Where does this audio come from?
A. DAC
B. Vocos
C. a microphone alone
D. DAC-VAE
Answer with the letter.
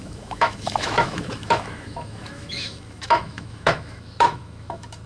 D